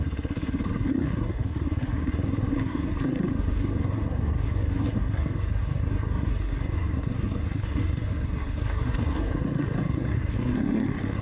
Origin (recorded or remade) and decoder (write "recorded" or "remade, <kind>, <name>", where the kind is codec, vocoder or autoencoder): remade, codec, SNAC